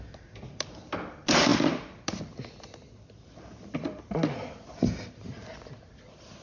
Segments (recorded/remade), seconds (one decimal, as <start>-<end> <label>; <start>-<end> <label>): 0.0-6.4 recorded